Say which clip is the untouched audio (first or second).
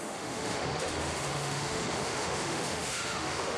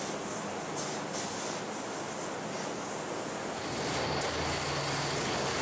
second